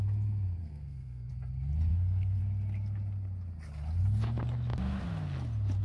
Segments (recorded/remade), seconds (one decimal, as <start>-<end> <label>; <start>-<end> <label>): 0.0-0.6 recorded; 0.6-1.3 remade; 1.3-1.9 recorded; 1.9-2.4 remade; 2.4-5.8 recorded